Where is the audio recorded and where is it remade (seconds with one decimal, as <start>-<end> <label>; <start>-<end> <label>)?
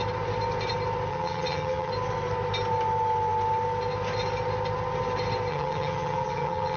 0.0-1.1 recorded; 1.1-1.9 remade; 1.9-5.5 recorded; 5.5-6.8 remade